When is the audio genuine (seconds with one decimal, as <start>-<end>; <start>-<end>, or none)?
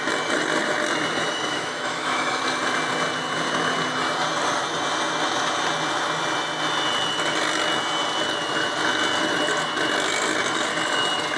0.0-1.2; 2.4-11.4